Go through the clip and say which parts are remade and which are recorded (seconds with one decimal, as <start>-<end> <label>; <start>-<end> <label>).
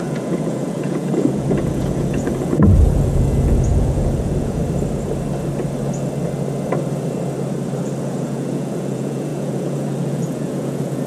0.0-4.6 remade; 4.6-8.0 recorded; 8.0-11.1 remade